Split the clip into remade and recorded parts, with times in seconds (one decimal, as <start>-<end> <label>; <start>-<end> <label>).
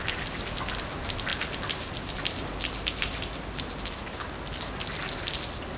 0.0-5.8 recorded